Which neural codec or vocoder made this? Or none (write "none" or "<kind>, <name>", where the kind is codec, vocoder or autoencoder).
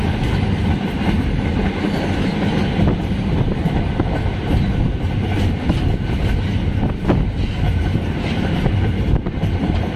none